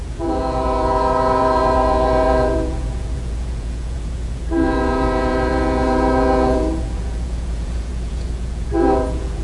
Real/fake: fake